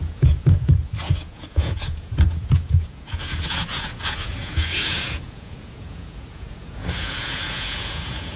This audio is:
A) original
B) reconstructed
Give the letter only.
B